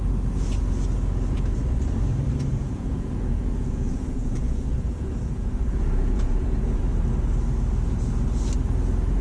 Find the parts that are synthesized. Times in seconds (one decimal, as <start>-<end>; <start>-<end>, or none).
2.5-6.8